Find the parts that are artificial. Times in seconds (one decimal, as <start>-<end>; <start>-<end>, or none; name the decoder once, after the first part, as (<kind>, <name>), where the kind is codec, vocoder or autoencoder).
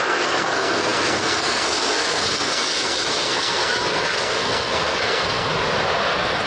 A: 0.0-5.5 (codec, SNAC); 6.1-6.5